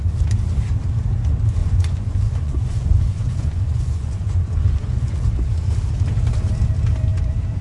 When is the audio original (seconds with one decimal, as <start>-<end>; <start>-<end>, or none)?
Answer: 0.0-1.6; 5.3-7.6